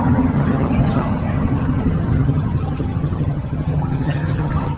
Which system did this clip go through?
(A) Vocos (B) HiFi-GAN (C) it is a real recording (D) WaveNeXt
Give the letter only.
B